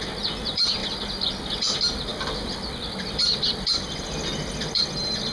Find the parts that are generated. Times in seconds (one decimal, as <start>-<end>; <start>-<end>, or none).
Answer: 2.1-2.9